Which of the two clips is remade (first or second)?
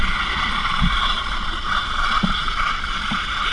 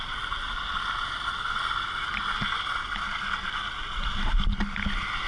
first